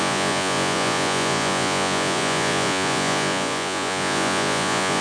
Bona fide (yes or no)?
no